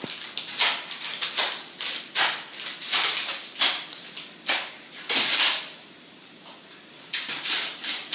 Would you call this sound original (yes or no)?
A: yes